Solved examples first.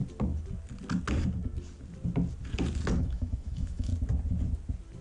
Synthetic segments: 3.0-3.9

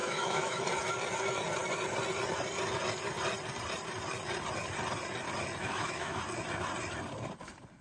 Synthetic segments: 0.0-0.6; 5.6-6.2

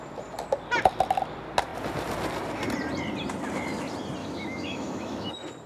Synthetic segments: 4.2-5.3

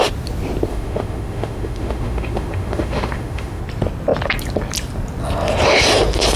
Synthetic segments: 0.7-3.6

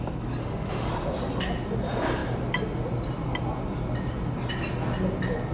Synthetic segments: 0.4-0.9

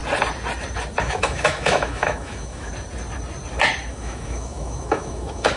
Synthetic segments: 1.0-2.7; 3.9-5.6

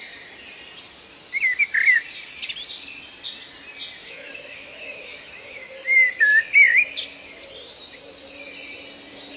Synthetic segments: 4.0-5.7